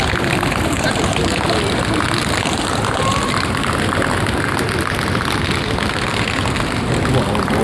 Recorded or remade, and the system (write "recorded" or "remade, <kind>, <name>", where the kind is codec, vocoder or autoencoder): recorded